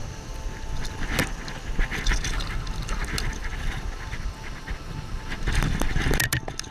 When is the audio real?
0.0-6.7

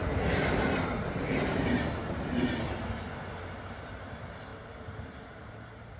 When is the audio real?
0.0-4.5

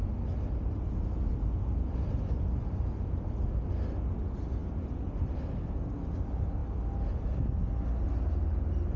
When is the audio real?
0.0-9.0

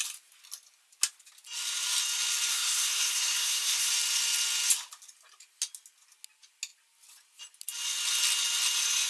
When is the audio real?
0.0-2.5; 3.9-9.1

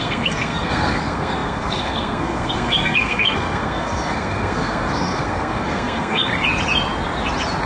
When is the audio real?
6.3-7.7

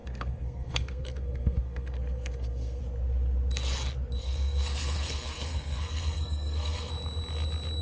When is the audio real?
2.8-4.2; 6.9-7.8

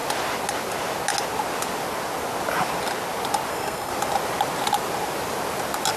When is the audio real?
0.0-3.5; 3.9-6.0

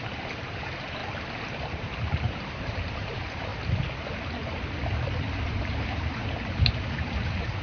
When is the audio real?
1.0-1.7; 3.5-5.4; 6.2-6.7